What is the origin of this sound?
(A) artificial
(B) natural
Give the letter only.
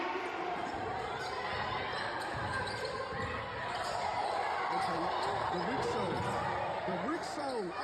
A